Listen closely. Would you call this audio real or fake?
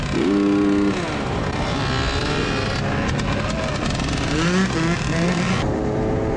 real